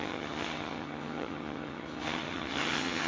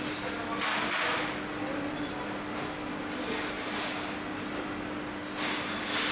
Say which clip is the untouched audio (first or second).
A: second